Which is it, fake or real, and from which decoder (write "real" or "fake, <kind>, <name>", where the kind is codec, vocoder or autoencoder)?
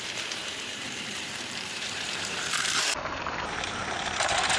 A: fake, vocoder, BigVGAN v2